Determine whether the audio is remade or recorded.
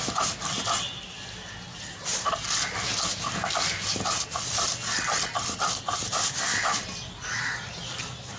recorded